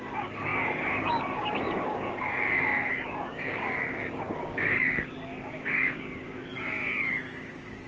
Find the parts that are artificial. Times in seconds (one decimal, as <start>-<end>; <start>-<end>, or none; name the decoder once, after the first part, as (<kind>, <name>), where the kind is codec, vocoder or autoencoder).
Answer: 0.0-7.9 (codec, DAC)